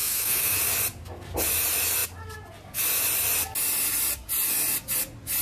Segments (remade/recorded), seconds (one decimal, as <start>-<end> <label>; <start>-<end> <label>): 0.0-0.6 remade; 0.6-5.4 recorded